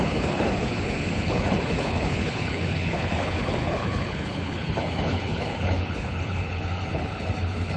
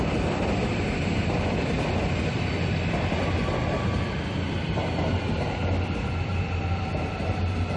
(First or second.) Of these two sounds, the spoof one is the first